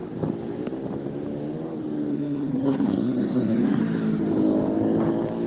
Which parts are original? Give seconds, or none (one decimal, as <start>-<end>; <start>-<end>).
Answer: 0.0-2.1; 3.8-5.5